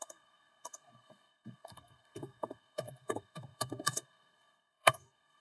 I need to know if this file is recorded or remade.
remade